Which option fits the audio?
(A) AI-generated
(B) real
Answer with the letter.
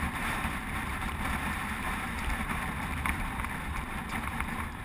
A